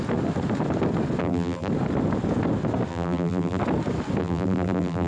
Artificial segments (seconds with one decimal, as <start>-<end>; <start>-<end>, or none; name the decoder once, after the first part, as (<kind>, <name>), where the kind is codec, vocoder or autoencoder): 1.2-1.7 (vocoder, BigVGAN v2); 2.9-3.6; 4.2-5.1

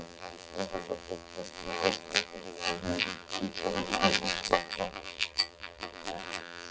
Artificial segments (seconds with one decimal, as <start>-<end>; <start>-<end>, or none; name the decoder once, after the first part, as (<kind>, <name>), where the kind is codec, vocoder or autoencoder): 0.0-6.7 (vocoder, BigVGAN v2)

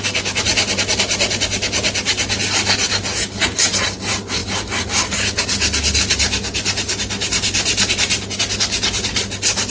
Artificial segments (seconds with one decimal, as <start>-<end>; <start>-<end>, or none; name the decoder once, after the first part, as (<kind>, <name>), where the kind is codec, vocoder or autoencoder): none

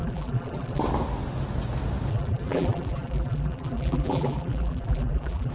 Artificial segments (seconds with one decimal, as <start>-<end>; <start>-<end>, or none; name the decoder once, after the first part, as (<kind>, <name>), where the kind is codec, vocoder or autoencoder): 0.0-0.8 (vocoder, BigVGAN v2); 2.1-5.5

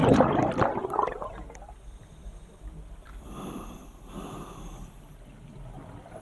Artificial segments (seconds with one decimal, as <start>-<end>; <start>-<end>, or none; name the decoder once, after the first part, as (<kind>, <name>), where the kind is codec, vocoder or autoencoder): none

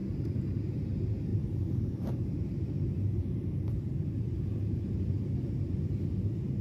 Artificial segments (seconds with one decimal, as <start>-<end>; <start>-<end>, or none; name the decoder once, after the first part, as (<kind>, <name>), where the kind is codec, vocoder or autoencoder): 0.0-0.6 (vocoder, BigVGAN v2); 1.3-5.0

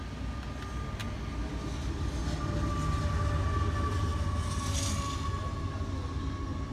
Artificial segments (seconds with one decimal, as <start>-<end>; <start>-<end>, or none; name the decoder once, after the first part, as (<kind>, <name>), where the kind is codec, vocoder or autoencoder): none